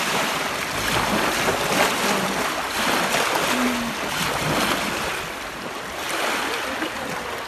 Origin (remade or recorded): recorded